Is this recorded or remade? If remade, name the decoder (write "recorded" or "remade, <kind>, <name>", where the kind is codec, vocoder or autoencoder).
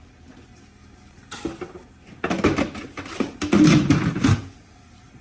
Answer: recorded